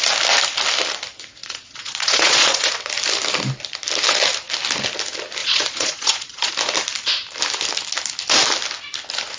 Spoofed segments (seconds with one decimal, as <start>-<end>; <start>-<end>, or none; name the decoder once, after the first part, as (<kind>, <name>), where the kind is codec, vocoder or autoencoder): 1.4-2.7 (vocoder, Vocos); 5.4-6.5